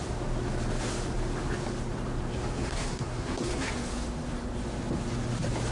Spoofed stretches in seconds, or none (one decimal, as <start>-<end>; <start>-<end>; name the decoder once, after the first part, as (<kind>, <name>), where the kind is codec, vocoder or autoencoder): 2.6-3.7 (codec, SNAC)